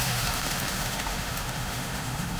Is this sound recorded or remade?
remade